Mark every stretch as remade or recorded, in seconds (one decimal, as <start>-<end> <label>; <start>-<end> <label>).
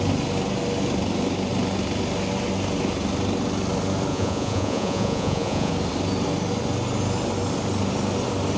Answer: 0.0-4.1 recorded; 4.1-5.7 remade; 5.7-8.6 recorded